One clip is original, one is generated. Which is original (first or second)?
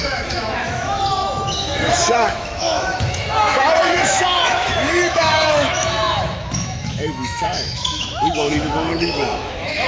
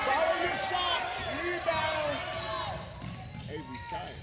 second